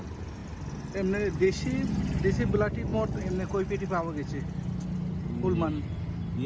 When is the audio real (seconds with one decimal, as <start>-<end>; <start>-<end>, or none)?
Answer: 0.0-6.5